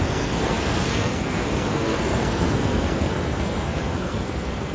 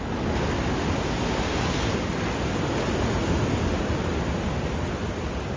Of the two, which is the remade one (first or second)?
first